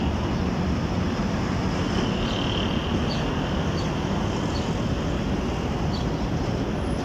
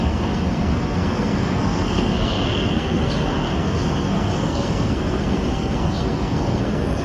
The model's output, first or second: second